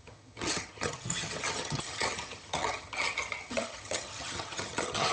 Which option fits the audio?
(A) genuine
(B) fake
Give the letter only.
B